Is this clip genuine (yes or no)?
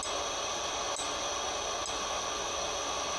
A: yes